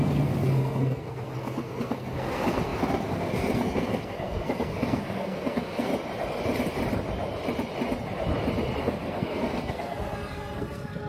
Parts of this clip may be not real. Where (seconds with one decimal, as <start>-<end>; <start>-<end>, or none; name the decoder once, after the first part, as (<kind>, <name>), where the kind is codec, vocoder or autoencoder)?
0.0-5.9 (codec, SNAC); 8.8-11.1